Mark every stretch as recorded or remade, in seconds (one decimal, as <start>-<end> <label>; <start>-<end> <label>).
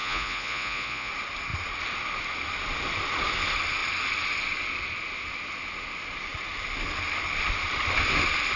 0.0-1.1 remade; 1.1-8.6 recorded